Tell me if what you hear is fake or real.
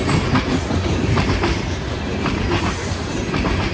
real